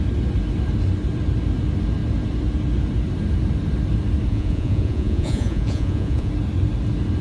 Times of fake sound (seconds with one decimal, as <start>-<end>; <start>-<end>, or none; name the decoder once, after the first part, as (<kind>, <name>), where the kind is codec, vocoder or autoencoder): 4.3-6.3 (vocoder, Vocos)